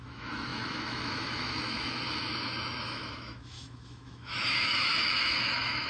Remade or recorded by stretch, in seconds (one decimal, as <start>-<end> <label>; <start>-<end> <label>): 0.0-5.9 remade